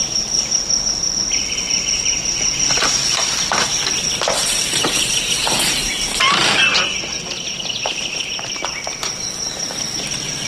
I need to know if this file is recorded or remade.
recorded